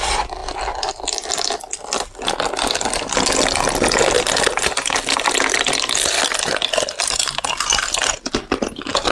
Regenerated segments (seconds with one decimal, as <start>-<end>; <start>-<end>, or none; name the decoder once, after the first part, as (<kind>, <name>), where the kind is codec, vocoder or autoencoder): none